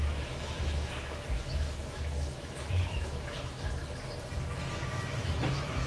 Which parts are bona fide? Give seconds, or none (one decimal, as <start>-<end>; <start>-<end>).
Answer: 3.8-4.4